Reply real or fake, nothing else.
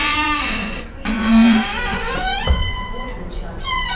fake